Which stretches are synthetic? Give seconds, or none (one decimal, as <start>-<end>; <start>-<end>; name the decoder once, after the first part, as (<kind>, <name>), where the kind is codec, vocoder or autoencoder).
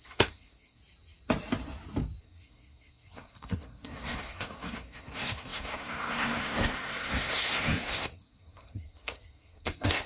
0.0-0.8 (codec, SNAC); 2.2-10.1